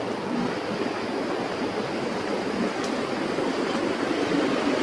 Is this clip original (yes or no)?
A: yes